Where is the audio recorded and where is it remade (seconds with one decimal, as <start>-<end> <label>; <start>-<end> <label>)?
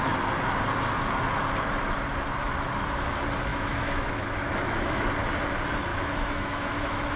0.0-3.5 recorded; 3.5-5.1 remade; 5.1-5.9 recorded; 5.9-7.2 remade